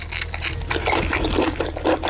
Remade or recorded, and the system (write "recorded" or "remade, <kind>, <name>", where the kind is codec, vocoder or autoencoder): recorded